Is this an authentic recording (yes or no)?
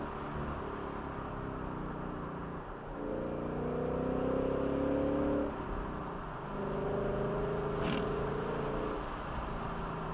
yes